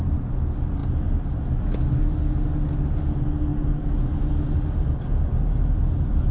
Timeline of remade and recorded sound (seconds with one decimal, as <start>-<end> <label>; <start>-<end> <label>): 0.0-6.3 recorded